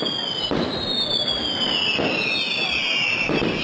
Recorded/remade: recorded